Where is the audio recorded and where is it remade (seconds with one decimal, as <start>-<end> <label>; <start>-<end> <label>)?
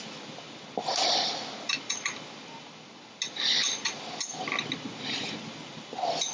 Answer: 0.0-6.3 recorded